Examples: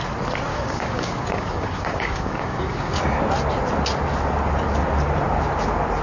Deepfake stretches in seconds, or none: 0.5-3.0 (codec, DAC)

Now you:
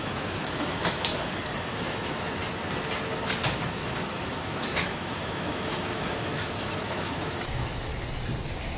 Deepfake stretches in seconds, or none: 0.0-1.1 (autoencoder, DAC-VAE); 1.8-2.4; 3.7-7.9

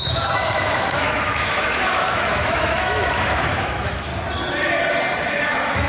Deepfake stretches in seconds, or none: 0.0-4.1 (autoencoder, DAC-VAE); 5.3-5.9

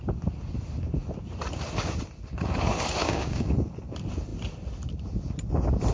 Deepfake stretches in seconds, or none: 3.0-3.5 (codec, DAC)

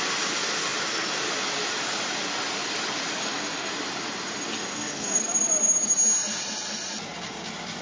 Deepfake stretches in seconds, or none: 3.2-3.7 (codec, DAC); 4.6-5.2

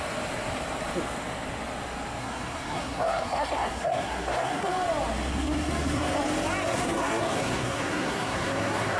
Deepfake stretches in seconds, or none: 2.2-4.7 (codec, SNAC); 5.3-6.2; 6.7-9.0